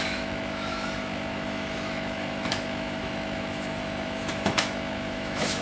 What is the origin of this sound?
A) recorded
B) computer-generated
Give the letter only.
B